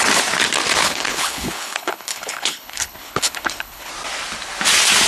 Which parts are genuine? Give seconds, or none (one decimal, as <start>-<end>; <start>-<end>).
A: 0.0-0.8; 3.9-5.1